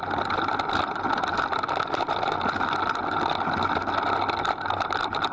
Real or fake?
real